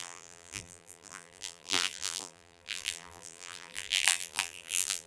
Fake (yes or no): yes